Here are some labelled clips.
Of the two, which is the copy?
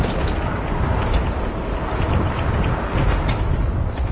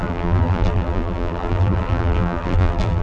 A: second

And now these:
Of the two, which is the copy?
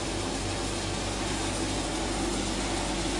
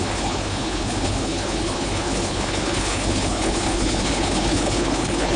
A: second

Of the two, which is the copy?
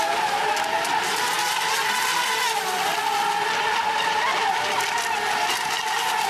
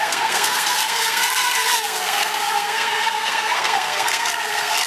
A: second